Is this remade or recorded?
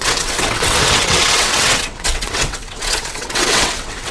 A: remade